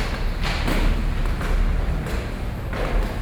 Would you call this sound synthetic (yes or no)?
no